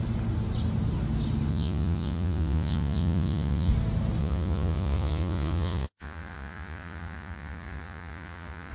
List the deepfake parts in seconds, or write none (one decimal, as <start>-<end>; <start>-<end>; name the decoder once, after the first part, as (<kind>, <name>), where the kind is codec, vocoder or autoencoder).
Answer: 1.5-3.7 (vocoder, Vocos); 4.2-8.7